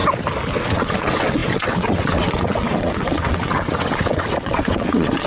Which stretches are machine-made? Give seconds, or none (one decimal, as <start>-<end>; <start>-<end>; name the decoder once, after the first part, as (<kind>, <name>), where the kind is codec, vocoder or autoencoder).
0.5-5.3 (vocoder, WaveNeXt)